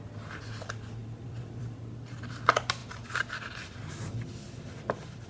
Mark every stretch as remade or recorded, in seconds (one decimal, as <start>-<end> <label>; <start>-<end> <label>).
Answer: 0.0-1.0 recorded; 1.0-1.8 remade; 1.8-2.8 recorded; 2.8-3.9 remade; 3.9-5.3 recorded